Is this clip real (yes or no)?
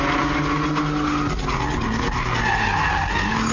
yes